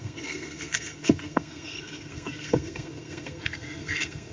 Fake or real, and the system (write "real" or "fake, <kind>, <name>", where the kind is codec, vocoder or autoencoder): fake, codec, SNAC